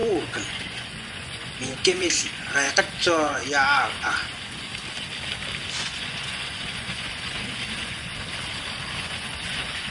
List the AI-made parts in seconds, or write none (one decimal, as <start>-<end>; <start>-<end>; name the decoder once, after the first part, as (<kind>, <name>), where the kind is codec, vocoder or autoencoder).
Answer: 0.0-3.4 (vocoder, Vocos); 3.9-4.7; 5.8-8.1; 9.0-9.9